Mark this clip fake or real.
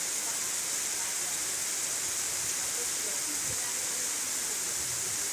real